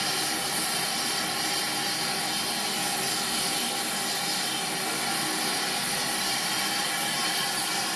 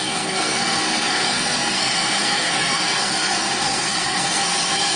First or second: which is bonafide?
first